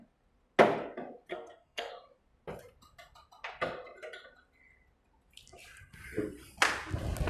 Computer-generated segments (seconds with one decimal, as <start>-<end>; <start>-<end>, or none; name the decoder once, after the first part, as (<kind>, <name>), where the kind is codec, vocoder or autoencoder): 1.3-1.9 (codec, SNAC)